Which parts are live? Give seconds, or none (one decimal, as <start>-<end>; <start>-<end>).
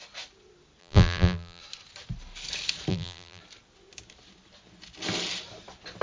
0.0-0.8; 1.6-2.9; 3.4-6.0